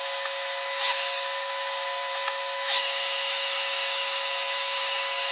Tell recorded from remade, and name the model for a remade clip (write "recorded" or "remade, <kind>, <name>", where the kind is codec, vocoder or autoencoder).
remade, autoencoder, DAC-VAE